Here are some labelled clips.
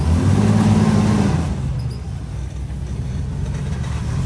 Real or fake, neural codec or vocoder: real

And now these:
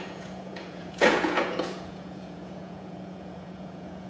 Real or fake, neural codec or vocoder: fake, vocoder, Vocos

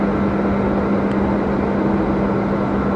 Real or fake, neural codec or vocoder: real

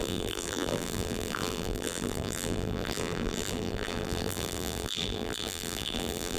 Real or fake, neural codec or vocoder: fake, vocoder, BigVGAN v2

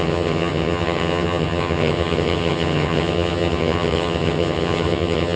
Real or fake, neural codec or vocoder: fake, vocoder, HiFi-GAN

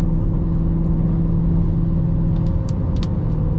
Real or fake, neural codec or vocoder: real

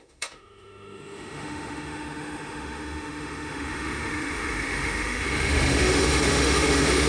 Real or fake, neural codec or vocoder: fake, autoencoder, DAC-VAE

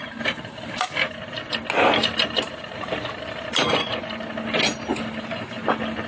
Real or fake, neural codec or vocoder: real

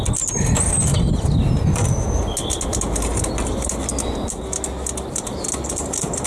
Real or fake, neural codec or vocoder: real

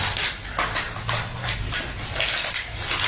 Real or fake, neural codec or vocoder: real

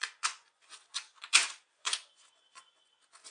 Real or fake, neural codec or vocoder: fake, vocoder, Vocos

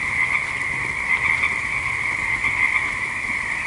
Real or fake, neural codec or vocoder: real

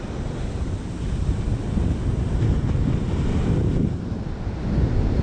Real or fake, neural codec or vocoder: real